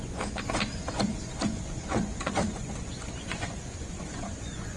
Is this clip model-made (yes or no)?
yes